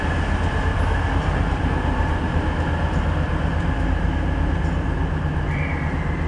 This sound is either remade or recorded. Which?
recorded